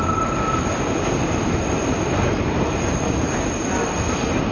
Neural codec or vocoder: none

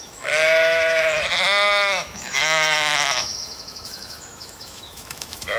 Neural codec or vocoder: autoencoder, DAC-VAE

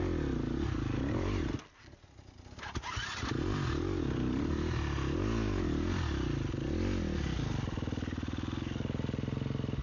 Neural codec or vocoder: none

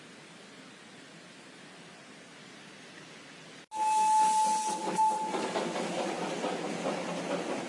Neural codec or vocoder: none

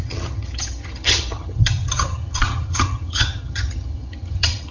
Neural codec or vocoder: vocoder, HiFi-GAN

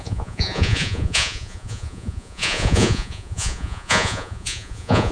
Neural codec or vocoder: vocoder, Vocos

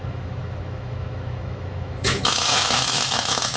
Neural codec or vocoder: autoencoder, DAC-VAE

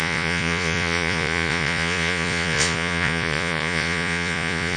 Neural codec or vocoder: vocoder, Vocos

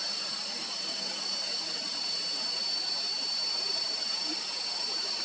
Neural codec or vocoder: none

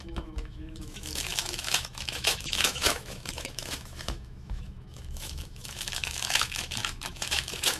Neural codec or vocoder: autoencoder, DAC-VAE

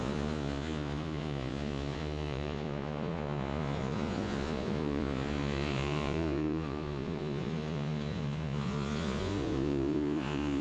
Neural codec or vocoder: vocoder, Vocos